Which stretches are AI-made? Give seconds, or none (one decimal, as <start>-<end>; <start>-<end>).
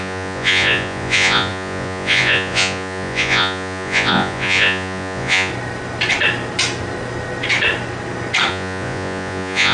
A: 0.0-5.5; 8.5-9.7